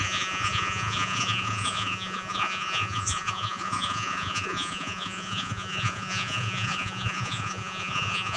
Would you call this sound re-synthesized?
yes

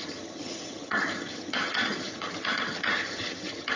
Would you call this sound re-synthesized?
yes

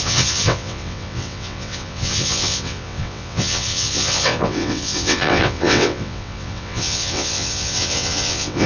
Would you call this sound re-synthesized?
yes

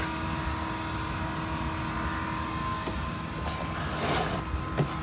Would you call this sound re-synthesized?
no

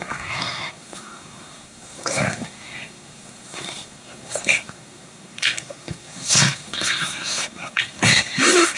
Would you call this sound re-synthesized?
yes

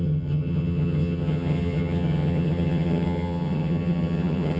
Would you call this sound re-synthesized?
yes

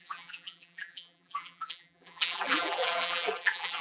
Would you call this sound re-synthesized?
yes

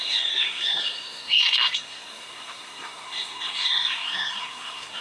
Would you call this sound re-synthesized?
yes